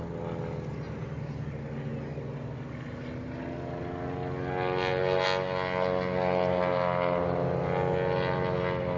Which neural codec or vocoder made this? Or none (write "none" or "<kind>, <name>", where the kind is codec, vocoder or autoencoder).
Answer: none